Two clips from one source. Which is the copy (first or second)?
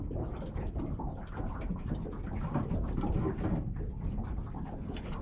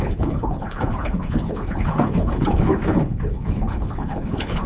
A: second